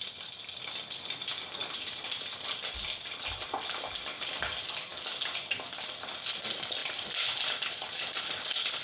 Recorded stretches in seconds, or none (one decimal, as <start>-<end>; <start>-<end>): 0.0-8.8